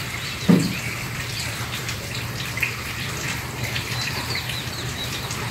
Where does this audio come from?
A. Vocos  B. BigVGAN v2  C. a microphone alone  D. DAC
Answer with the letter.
B